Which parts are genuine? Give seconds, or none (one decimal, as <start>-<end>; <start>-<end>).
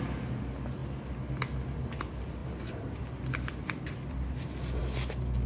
0.0-2.4; 4.3-5.5